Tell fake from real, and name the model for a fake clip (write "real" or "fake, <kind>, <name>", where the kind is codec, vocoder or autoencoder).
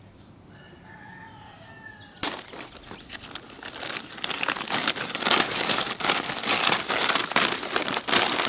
real